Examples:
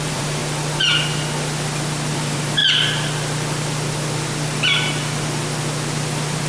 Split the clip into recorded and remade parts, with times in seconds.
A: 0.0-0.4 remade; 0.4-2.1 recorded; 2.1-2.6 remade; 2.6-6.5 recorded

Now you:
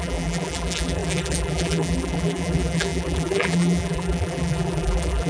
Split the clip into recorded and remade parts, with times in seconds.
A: 0.0-5.3 remade

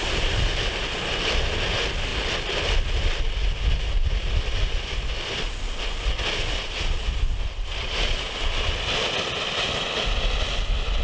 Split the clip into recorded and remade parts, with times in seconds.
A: 0.0-0.8 remade; 0.8-2.1 recorded; 2.1-2.6 remade; 2.6-7.0 recorded; 7.0-8.3 remade; 8.3-11.0 recorded

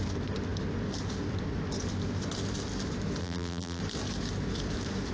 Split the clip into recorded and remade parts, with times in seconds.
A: 0.0-3.2 recorded; 3.2-3.8 remade; 3.8-5.1 recorded

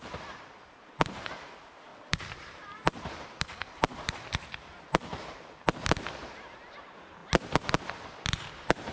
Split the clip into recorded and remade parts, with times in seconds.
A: 0.0-1.9 recorded; 1.9-6.8 remade; 6.8-8.9 recorded

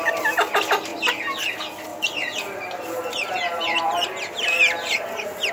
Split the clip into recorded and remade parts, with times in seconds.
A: 0.0-1.9 recorded; 1.9-5.5 remade

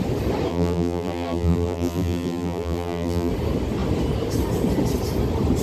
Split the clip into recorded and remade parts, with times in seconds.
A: 0.0-0.5 recorded; 0.5-3.3 remade; 3.3-5.6 recorded

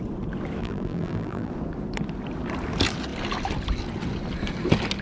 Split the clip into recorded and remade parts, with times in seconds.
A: 0.0-0.6 recorded; 0.6-1.5 remade; 1.5-5.0 recorded